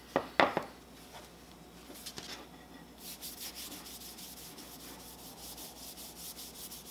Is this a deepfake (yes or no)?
no